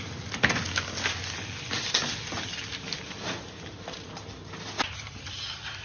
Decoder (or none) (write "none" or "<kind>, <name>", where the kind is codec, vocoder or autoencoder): none